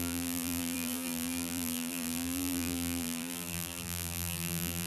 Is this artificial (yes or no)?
yes